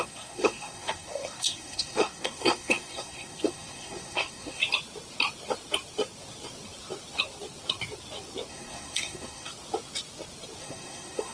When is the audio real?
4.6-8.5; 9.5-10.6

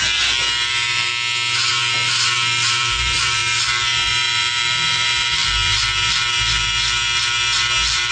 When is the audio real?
1.1-1.7

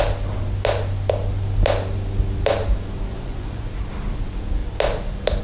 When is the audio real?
0.0-3.1; 3.7-5.4

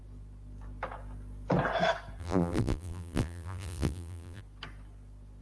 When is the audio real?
0.0-2.2; 4.4-5.4

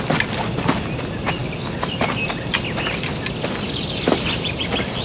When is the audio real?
0.0-5.0

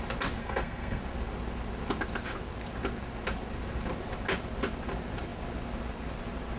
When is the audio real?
0.0-0.4; 1.0-6.6

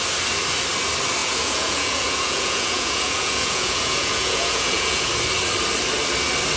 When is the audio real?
0.0-1.2; 5.1-6.6